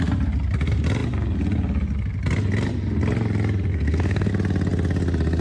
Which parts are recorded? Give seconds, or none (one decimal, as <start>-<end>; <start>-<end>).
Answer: 0.0-3.7; 4.3-5.4